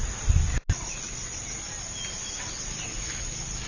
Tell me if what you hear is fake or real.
real